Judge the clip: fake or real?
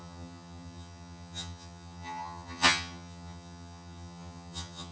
fake